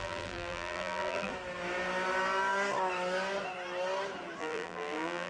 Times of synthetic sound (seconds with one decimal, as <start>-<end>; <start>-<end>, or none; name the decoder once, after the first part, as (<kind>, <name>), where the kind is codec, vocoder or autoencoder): 0.0-1.3 (vocoder, BigVGAN v2); 4.4-5.3